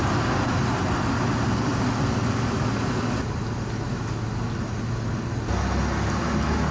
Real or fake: real